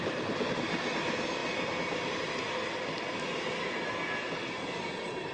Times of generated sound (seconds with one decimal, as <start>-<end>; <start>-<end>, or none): none